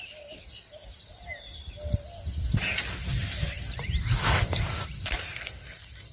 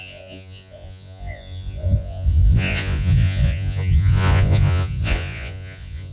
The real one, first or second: first